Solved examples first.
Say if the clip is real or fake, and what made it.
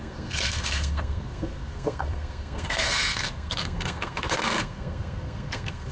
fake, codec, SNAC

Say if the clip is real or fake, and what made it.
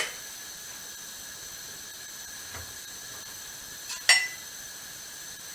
real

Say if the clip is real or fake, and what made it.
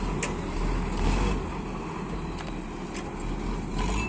real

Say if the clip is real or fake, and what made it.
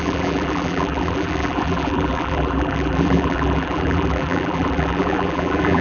fake, vocoder, BigVGAN v2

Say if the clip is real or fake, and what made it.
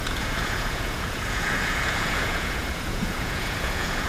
fake, vocoder, Vocos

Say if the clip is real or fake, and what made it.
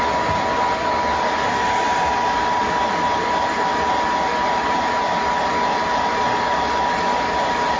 real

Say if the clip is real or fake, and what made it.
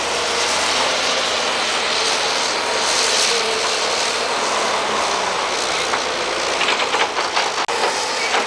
real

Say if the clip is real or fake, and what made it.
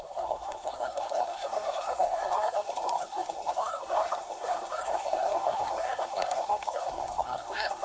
fake, codec, SNAC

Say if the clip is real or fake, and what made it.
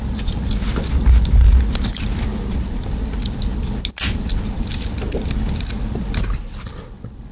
real